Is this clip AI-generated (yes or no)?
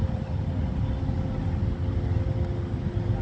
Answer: no